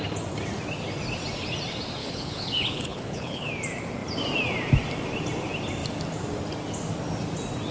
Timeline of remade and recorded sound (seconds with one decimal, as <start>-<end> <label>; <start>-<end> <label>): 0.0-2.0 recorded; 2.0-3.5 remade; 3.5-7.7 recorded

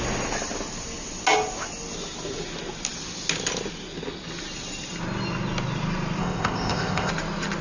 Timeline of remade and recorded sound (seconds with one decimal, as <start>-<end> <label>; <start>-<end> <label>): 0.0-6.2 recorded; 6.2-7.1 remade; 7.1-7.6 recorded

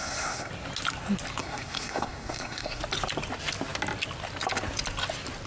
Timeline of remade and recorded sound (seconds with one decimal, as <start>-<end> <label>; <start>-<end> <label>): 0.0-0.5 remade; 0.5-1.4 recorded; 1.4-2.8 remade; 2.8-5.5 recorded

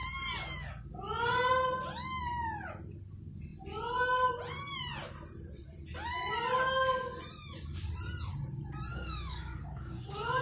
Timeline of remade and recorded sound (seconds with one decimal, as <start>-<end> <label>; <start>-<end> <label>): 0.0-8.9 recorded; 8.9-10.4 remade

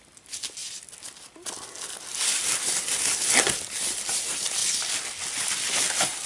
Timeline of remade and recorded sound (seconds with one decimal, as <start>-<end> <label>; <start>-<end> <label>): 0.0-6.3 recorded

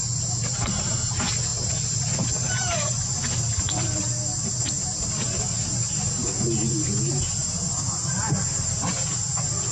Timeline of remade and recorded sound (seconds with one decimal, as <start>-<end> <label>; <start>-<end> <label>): 0.0-1.5 recorded; 1.5-4.0 remade; 4.0-9.7 recorded